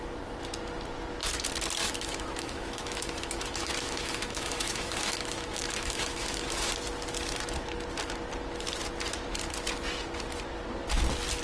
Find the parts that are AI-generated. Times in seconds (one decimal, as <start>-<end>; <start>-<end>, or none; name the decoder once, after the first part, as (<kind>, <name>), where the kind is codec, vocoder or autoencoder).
1.8-6.7 (autoencoder, DAC-VAE)